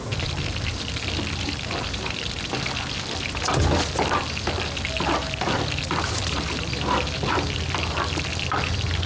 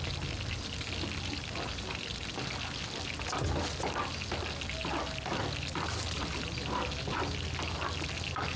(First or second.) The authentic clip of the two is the second